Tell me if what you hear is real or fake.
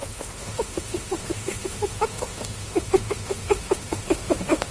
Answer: fake